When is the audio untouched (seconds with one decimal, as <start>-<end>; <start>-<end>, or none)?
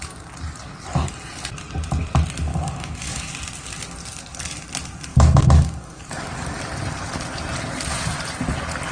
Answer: 0.0-2.5; 3.3-5.1; 6.6-8.9